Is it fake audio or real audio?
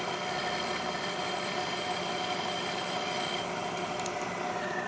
real